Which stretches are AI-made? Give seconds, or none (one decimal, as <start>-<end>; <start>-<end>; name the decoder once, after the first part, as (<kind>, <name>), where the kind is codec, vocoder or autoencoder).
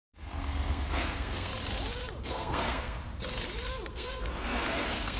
0.0-1.5 (codec, SNAC); 2.2-3.0; 3.9-5.2